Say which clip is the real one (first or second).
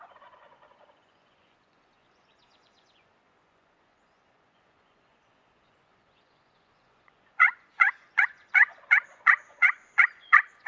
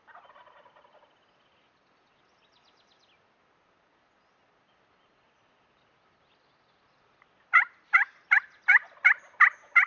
second